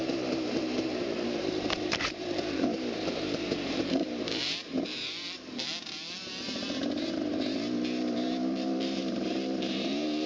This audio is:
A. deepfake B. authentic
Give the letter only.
A